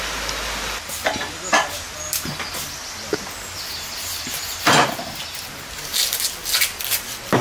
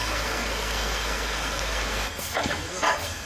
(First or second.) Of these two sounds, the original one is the first